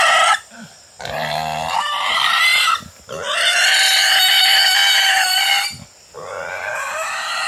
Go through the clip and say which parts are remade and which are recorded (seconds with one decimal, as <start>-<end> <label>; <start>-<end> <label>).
0.0-7.5 recorded